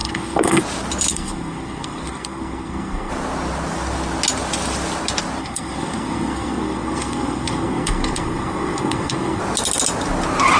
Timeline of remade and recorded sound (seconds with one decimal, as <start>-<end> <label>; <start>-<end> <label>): 0.0-0.6 remade; 0.6-1.1 recorded; 1.1-3.1 remade; 3.1-5.4 recorded; 5.4-9.4 remade; 9.4-10.6 recorded